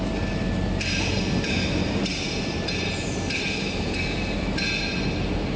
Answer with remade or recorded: recorded